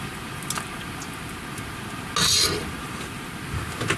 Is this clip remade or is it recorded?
recorded